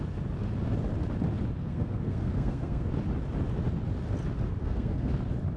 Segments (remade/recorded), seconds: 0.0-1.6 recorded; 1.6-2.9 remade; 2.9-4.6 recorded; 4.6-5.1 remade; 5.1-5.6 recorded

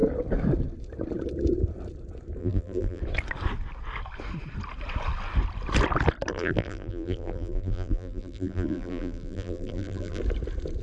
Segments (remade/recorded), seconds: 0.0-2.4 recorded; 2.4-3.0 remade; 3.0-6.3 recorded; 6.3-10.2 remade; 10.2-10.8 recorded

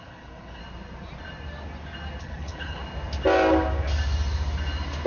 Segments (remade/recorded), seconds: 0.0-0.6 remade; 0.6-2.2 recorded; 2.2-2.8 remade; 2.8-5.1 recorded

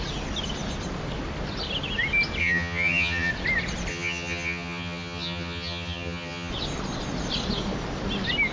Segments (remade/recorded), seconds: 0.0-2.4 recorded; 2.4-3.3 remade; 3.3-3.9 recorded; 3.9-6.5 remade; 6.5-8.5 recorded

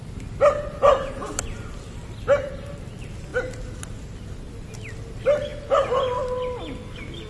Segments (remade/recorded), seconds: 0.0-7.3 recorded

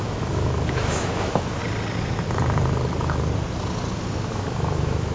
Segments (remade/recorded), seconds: 0.0-1.6 remade; 1.6-4.2 recorded; 4.2-5.1 remade

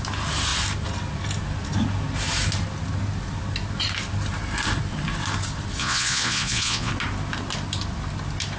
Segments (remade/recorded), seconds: 0.0-5.8 recorded; 5.8-6.9 remade; 6.9-8.6 recorded

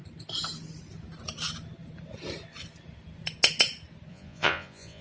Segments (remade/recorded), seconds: 0.0-4.1 recorded; 4.1-5.0 remade